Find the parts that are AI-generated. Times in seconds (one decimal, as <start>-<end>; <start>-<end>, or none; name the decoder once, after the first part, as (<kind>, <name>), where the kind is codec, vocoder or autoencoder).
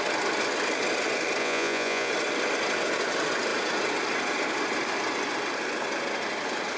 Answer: 1.4-2.1 (vocoder, Vocos)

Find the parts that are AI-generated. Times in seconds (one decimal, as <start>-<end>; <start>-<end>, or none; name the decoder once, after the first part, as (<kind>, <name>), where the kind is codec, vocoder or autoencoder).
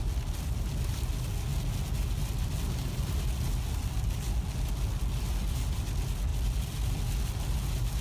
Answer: none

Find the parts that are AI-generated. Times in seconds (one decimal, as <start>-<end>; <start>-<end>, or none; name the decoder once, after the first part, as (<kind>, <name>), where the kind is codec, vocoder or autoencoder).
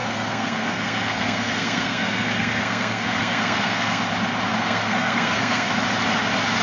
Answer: 0.0-4.0 (codec, SNAC); 4.5-5.7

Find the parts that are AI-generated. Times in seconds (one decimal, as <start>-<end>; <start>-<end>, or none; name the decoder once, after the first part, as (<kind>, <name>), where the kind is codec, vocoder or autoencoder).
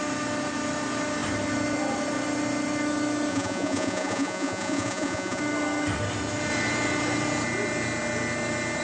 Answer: 3.3-5.4 (vocoder, Vocos)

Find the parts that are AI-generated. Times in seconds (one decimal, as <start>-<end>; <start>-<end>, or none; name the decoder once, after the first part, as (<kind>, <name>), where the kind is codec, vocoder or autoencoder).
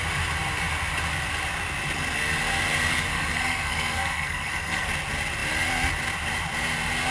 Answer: 3.1-4.9 (codec, SNAC)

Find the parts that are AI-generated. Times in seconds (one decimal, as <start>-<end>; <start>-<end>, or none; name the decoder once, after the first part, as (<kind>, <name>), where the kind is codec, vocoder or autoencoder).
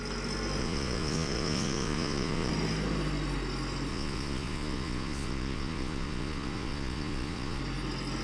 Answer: 0.6-2.5 (vocoder, Vocos); 3.9-7.6